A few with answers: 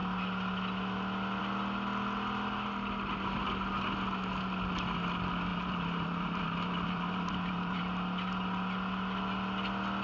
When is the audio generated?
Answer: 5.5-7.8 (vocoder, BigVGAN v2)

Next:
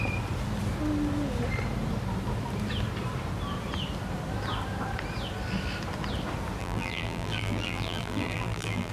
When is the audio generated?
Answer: 6.6-8.9 (vocoder, BigVGAN v2)